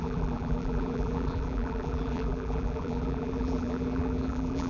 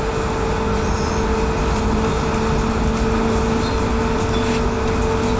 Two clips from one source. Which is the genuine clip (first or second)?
second